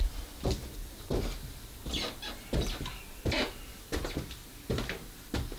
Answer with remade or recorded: recorded